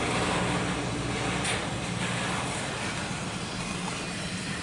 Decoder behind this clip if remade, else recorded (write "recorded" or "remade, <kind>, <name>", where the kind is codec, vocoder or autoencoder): recorded